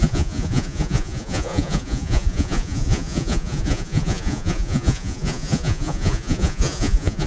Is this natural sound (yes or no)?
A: no